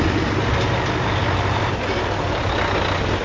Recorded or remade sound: recorded